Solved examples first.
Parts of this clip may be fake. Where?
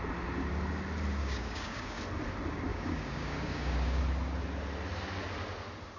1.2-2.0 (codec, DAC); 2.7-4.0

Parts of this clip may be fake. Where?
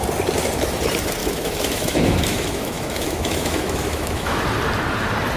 1.2-4.4 (autoencoder, DAC-VAE)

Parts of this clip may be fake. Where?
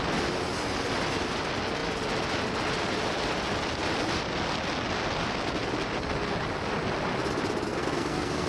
7.7-8.5 (codec, SNAC)